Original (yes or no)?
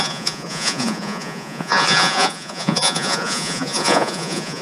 no